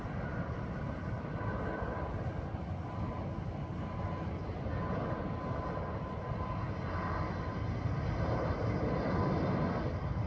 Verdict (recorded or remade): recorded